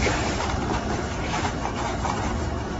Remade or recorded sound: remade